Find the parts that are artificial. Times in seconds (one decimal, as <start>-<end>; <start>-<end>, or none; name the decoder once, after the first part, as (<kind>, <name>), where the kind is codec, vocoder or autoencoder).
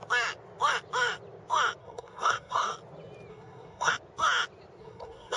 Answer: 1.8-2.7 (codec, SNAC); 3.3-3.9; 4.8-5.4